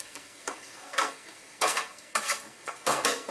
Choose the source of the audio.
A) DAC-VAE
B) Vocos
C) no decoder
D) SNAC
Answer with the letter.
D